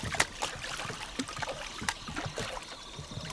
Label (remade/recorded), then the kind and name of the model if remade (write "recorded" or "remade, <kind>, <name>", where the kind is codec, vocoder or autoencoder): recorded